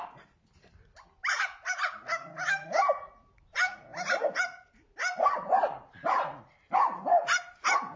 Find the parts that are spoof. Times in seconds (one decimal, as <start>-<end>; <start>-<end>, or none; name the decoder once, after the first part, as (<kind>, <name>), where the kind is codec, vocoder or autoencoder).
none